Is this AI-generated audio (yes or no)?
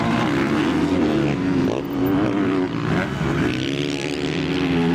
no